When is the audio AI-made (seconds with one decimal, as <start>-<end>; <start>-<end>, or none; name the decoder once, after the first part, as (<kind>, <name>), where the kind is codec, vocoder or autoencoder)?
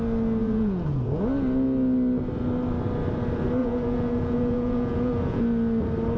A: 0.4-1.2 (vocoder, Vocos); 3.6-5.4